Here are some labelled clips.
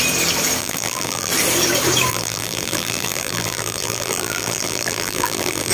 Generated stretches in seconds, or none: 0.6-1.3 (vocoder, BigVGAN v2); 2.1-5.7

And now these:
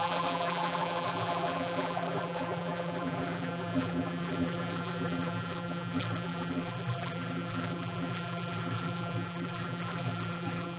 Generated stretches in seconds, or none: 0.0-10.8 (vocoder, BigVGAN v2)

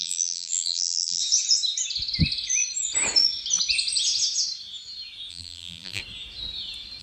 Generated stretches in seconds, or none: 0.0-1.2 (vocoder, BigVGAN v2); 5.3-6.0

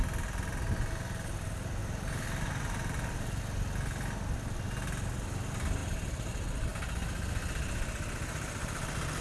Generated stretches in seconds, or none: 1.8-3.4 (vocoder, BigVGAN v2)

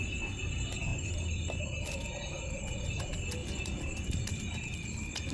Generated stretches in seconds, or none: 0.9-1.6 (vocoder, BigVGAN v2); 3.4-4.4

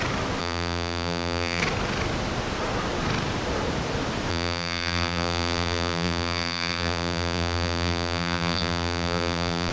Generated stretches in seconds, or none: 0.4-1.6 (vocoder, BigVGAN v2); 4.3-9.7

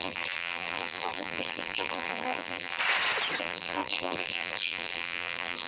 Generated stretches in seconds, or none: 0.0-2.8 (vocoder, BigVGAN v2); 3.4-5.7